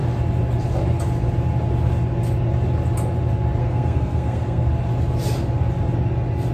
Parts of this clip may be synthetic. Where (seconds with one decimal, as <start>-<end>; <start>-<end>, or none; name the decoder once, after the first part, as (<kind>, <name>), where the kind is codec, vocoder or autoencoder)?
3.6-4.7 (codec, SNAC)